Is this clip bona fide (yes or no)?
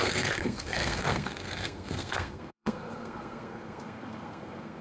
no